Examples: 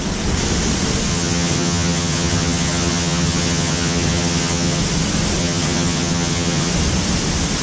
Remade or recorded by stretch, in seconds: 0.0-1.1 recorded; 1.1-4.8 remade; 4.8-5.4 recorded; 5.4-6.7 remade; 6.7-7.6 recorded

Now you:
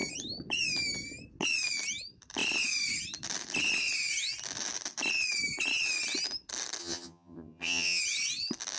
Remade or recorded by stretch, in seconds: 0.0-6.8 recorded; 6.8-8.0 remade; 8.0-8.8 recorded

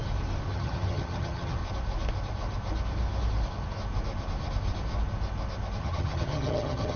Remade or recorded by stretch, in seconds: 0.0-0.5 recorded; 0.5-1.6 remade; 1.6-5.8 recorded; 5.8-7.0 remade

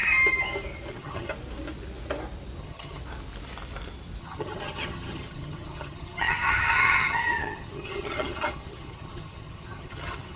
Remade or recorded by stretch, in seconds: 0.0-0.9 recorded; 0.9-1.3 remade; 1.3-2.6 recorded; 2.6-3.0 remade; 3.0-4.2 recorded; 4.2-10.4 remade

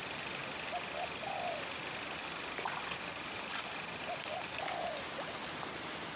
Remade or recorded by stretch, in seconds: 0.0-6.2 recorded